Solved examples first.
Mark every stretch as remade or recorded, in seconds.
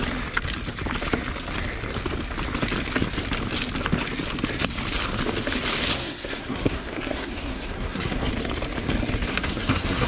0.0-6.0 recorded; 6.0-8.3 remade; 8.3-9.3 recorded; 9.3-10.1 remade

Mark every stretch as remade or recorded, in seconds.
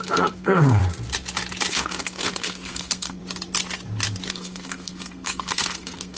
0.0-0.8 remade; 0.8-1.7 recorded; 1.7-3.2 remade; 3.2-4.3 recorded; 4.3-6.2 remade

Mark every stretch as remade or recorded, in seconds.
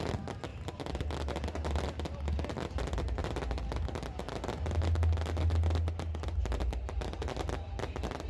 0.0-8.3 recorded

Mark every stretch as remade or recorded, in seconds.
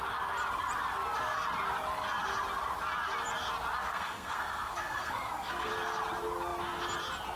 0.0-3.8 recorded; 3.8-5.7 remade; 5.7-7.4 recorded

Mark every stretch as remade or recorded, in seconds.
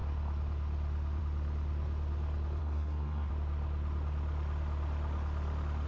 0.0-2.6 recorded; 2.6-3.3 remade; 3.3-5.9 recorded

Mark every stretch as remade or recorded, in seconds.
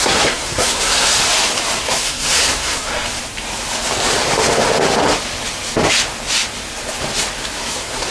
0.0-1.1 remade; 1.1-1.8 recorded; 1.8-2.9 remade; 2.9-7.6 recorded; 7.6-8.1 remade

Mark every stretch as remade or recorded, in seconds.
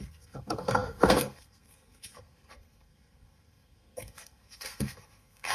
0.0-5.5 remade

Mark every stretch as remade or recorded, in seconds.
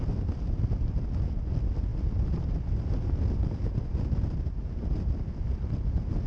0.0-6.3 recorded